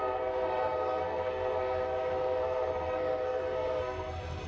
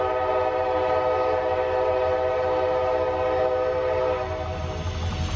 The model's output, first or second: first